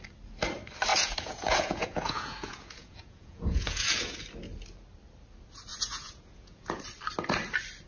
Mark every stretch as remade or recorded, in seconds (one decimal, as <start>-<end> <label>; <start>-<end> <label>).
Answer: 0.0-0.9 recorded; 0.9-4.2 remade; 4.2-5.7 recorded; 5.7-6.8 remade; 6.8-7.9 recorded